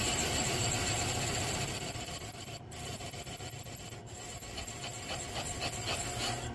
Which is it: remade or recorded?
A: recorded